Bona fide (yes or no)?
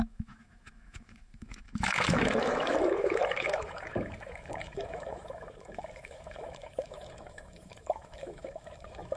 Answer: no